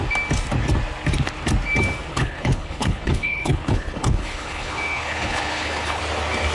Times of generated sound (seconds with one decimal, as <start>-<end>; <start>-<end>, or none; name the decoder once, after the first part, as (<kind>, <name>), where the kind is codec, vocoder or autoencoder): 2.1-6.0 (codec, HILCodec)